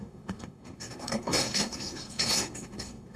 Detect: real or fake fake